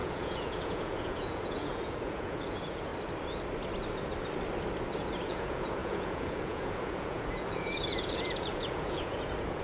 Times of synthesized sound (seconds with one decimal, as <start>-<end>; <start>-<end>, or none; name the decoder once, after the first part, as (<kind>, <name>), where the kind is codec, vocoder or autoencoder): 0.0-2.9 (vocoder, Vocos); 5.2-9.6